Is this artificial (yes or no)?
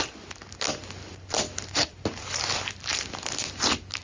no